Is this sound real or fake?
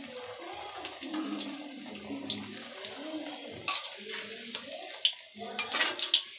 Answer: real